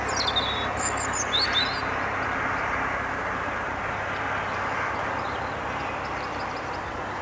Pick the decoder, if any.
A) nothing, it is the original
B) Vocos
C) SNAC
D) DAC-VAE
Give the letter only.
A